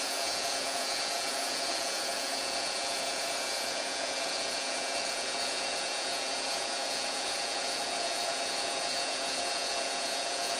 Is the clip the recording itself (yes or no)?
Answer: no